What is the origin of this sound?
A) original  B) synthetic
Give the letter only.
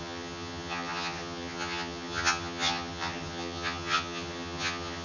B